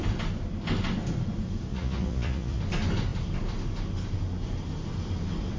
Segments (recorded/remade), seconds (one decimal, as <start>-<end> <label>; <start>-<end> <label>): 0.0-1.7 recorded; 1.7-2.6 remade; 2.6-5.6 recorded